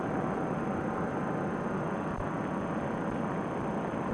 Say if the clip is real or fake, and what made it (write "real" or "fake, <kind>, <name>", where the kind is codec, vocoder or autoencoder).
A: real